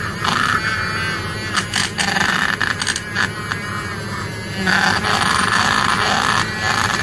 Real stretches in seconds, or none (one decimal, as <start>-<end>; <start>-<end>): 0.0-1.8; 2.6-7.0